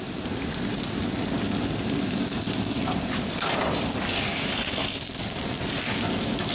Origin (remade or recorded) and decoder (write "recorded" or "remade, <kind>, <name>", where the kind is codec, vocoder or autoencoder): recorded